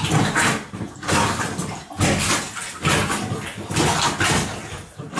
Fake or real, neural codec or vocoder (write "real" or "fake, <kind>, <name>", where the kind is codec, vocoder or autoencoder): real